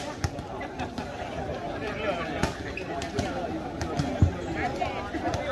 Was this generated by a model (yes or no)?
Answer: no